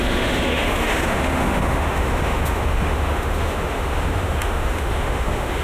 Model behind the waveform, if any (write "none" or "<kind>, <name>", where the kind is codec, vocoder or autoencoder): autoencoder, DAC-VAE